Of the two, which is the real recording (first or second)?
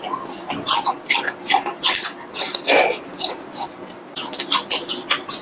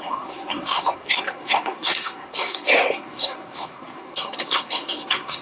first